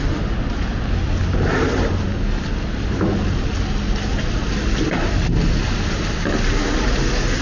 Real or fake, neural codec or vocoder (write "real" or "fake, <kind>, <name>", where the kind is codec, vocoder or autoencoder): real